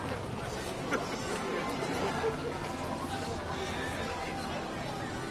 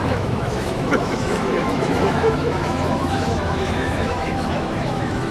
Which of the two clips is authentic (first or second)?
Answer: first